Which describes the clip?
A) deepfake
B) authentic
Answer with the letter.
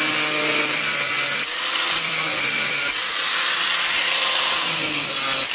B